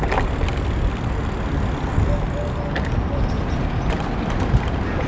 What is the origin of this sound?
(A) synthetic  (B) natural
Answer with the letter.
B